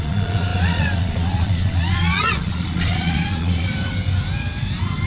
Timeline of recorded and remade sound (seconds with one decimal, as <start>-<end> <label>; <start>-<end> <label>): 0.0-3.7 remade; 3.7-5.1 recorded